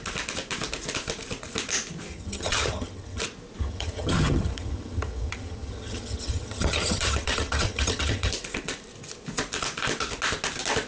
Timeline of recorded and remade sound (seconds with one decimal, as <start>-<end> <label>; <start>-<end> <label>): 0.0-2.1 recorded; 2.1-3.2 remade; 3.2-3.6 recorded; 3.6-8.3 remade; 8.3-10.9 recorded